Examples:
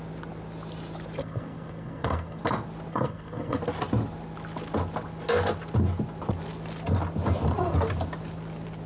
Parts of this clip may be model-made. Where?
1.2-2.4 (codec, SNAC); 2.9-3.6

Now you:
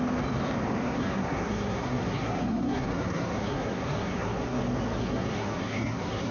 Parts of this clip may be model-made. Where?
0.8-4.6 (codec, SNAC); 5.0-6.3

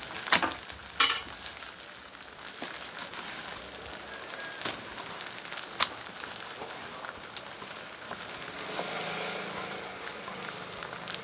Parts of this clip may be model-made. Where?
none

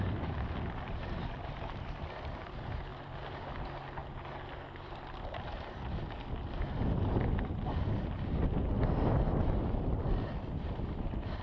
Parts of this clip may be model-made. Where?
none

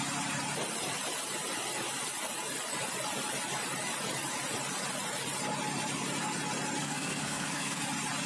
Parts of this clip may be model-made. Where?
6.8-7.8 (codec, SNAC)